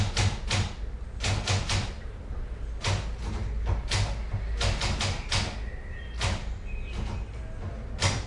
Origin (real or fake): real